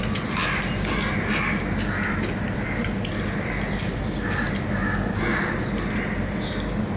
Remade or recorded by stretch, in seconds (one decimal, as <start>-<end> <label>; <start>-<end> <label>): 0.0-7.0 recorded